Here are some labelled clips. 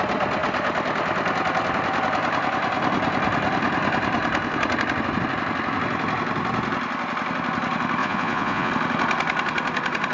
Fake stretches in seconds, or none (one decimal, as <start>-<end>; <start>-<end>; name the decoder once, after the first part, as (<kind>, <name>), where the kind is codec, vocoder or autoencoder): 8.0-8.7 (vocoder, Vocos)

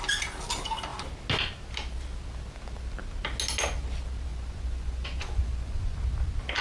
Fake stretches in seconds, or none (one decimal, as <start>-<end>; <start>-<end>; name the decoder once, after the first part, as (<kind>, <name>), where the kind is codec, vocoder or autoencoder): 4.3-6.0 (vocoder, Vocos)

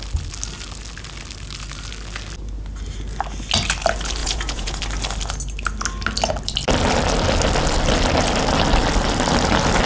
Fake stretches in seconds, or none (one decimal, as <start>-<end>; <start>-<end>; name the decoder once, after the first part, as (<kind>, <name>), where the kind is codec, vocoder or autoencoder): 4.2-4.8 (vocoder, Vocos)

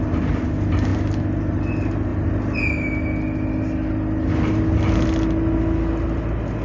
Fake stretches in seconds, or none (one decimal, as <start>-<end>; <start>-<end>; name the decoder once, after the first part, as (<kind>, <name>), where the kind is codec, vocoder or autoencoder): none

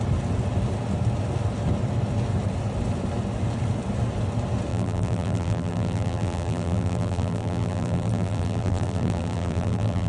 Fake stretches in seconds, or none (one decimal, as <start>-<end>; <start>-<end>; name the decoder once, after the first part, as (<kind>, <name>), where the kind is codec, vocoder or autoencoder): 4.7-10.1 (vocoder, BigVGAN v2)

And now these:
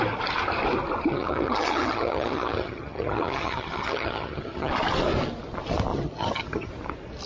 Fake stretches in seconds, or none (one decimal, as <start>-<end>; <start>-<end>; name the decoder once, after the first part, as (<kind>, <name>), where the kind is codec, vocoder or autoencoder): 1.1-4.7 (vocoder, HiFi-GAN); 5.9-6.7